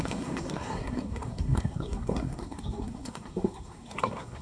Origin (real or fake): fake